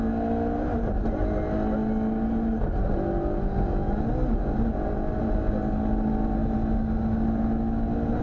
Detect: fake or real real